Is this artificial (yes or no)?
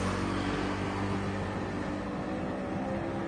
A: no